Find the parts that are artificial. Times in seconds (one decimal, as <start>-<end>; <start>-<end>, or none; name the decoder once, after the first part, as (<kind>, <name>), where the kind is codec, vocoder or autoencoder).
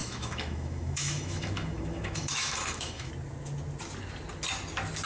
0.0-3.1 (autoencoder, DAC-VAE)